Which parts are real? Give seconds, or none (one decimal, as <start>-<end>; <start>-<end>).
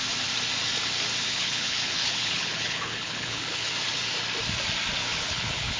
0.0-1.3; 3.7-5.0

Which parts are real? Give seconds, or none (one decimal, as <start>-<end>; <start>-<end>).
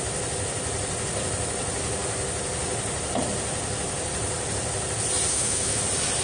0.0-5.3; 5.8-6.2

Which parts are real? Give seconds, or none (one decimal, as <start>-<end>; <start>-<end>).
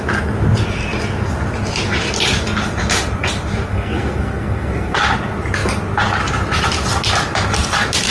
0.0-3.7; 5.0-8.1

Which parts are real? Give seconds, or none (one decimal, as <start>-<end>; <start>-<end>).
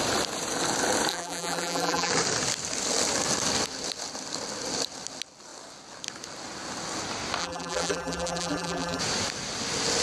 0.0-1.1; 2.1-7.4; 9.0-10.0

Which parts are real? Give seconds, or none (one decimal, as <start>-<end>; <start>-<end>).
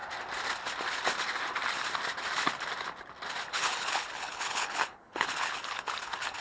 0.0-3.5